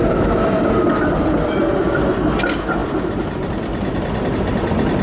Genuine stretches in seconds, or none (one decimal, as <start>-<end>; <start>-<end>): 0.0-5.0